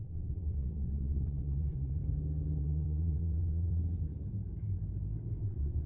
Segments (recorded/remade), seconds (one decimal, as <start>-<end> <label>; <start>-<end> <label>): 0.0-2.0 remade; 2.0-2.6 recorded; 2.6-3.8 remade; 3.8-5.4 recorded; 5.4-5.9 remade